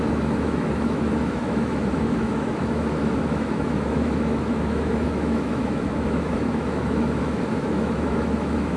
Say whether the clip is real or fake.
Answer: fake